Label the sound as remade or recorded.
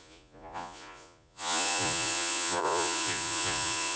remade